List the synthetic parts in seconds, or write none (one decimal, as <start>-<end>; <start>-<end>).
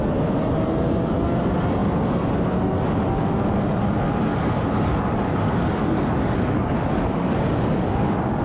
4.3-8.4